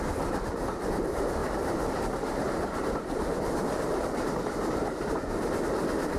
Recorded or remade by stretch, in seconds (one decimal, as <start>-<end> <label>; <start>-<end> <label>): 0.0-1.4 recorded; 1.4-5.1 remade; 5.1-6.2 recorded